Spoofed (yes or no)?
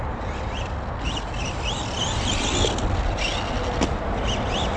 no